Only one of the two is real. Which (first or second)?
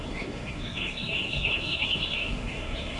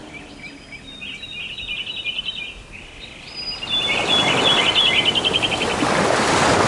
second